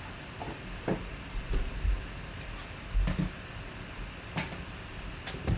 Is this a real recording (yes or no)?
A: yes